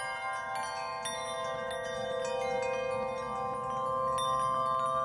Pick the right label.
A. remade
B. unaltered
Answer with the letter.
B